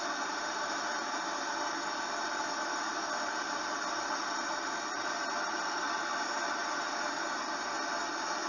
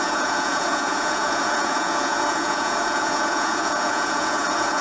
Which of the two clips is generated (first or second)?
second